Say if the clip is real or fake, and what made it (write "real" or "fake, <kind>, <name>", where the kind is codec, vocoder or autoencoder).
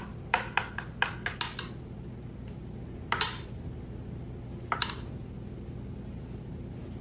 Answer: real